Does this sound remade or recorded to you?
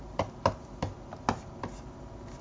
recorded